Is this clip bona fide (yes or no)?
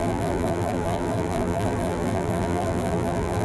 no